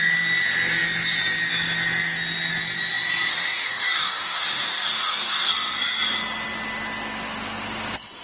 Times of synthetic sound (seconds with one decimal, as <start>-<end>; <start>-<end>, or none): 3.3-5.5